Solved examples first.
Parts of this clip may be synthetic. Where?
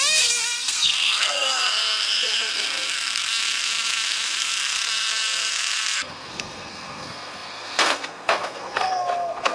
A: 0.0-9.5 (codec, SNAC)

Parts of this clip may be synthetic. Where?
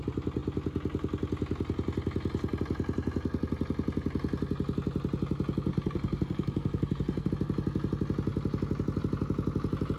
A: 5.7-7.3 (codec, SNAC)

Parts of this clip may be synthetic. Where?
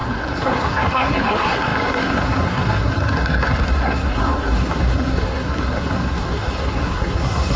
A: 0.0-7.6 (codec, SNAC)